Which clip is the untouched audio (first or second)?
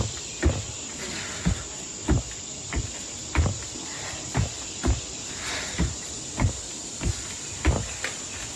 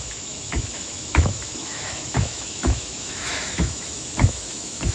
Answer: first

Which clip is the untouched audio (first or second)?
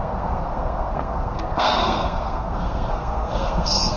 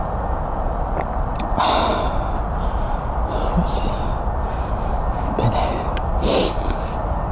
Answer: second